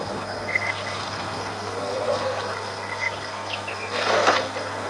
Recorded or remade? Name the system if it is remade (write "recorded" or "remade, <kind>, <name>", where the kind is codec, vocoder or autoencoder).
remade, codec, SNAC